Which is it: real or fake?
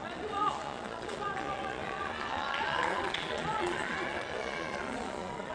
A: fake